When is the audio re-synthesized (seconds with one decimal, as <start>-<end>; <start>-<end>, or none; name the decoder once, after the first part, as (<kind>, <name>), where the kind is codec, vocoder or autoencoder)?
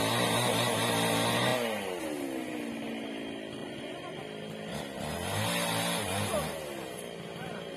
3.6-4.2 (vocoder, Vocos)